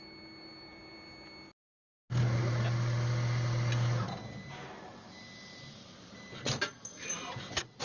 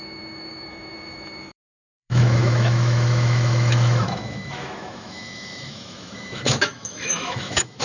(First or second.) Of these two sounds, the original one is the first